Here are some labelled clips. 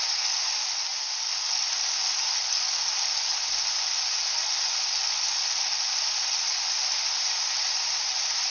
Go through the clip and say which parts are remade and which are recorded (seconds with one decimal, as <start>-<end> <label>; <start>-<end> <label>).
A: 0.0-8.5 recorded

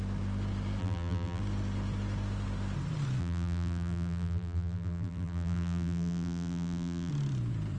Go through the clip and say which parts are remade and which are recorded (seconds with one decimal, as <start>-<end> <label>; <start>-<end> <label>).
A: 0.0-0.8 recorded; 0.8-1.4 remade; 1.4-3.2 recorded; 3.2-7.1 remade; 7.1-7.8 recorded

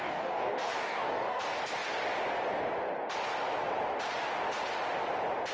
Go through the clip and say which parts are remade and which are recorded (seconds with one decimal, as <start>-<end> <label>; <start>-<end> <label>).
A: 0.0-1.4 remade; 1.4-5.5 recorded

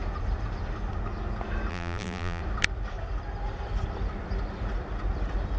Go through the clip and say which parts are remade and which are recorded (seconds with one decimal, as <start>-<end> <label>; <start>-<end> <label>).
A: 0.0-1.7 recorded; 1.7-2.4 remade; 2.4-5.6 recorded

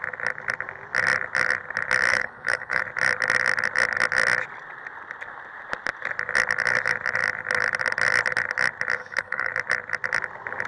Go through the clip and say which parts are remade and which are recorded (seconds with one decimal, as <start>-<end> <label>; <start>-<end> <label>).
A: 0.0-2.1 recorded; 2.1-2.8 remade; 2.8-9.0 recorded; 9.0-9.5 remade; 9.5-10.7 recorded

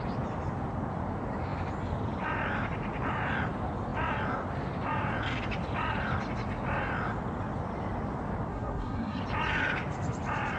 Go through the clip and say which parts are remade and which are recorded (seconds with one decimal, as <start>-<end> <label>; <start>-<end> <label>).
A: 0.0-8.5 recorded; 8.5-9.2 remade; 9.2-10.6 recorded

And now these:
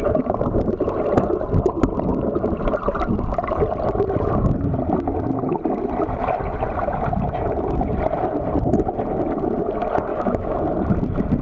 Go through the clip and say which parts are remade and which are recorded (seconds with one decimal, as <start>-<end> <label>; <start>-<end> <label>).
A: 0.0-10.1 recorded; 10.1-10.6 remade; 10.6-11.4 recorded

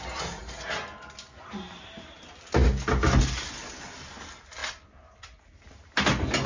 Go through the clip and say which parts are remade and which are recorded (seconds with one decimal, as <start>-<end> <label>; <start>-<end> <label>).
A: 0.0-6.5 recorded